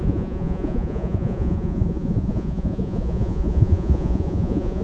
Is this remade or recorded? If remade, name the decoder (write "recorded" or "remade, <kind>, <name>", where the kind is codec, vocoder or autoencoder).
remade, vocoder, Vocos